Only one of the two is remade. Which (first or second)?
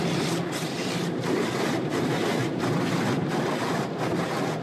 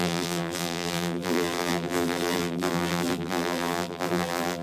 second